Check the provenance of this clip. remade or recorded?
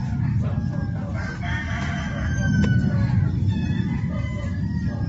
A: recorded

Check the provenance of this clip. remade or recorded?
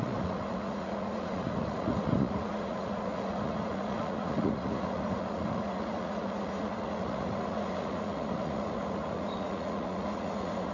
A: remade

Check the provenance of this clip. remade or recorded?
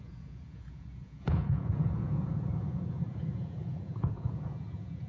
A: remade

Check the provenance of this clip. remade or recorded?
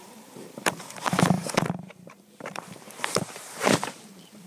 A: remade